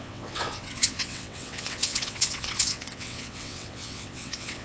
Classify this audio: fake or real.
fake